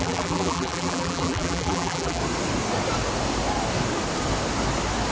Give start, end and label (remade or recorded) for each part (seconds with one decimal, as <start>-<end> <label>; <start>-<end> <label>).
0.0-2.2 remade; 2.2-5.1 recorded